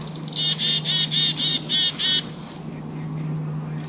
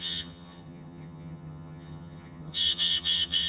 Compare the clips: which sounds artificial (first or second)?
second